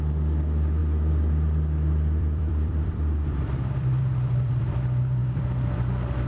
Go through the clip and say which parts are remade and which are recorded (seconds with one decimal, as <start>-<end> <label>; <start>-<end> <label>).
0.0-0.8 recorded; 0.8-4.6 remade; 4.6-6.3 recorded